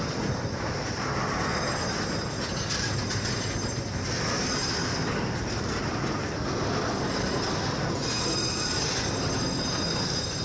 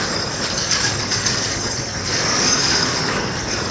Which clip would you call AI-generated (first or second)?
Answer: second